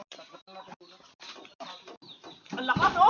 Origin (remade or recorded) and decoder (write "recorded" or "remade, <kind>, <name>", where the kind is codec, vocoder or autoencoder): recorded